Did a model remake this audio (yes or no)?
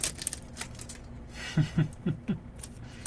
no